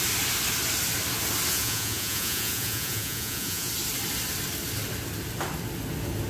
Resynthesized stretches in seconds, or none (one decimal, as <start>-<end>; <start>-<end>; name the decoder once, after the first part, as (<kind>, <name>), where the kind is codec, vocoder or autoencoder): 1.5-3.7 (vocoder, Vocos)